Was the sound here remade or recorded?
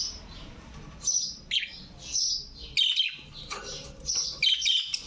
recorded